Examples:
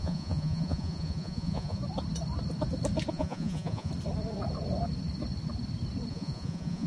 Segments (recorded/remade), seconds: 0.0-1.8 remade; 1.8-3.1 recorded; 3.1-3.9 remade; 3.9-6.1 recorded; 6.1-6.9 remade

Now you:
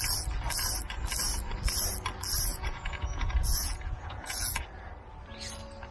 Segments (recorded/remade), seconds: 0.0-2.5 recorded; 2.5-4.6 remade; 4.6-5.9 recorded

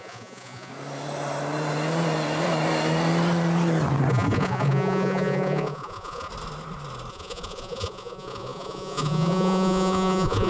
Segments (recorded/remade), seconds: 0.0-0.7 remade; 0.7-4.1 recorded; 4.1-6.3 remade; 6.3-7.1 recorded; 7.1-10.5 remade

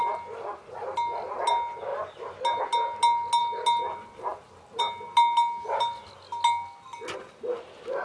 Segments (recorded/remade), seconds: 0.0-8.0 recorded